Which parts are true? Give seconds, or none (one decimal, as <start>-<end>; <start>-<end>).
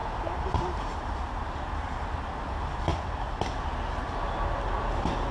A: 1.1-5.3